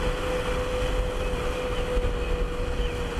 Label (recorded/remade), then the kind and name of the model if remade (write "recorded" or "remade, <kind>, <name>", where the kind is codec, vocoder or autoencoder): recorded